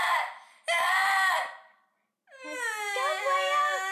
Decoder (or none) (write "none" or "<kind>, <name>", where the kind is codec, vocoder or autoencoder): none